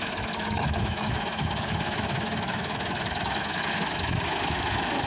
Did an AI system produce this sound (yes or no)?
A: yes